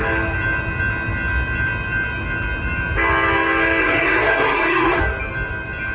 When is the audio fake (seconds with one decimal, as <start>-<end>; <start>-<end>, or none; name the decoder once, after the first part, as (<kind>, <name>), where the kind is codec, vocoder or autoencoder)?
3.8-5.0 (codec, SNAC)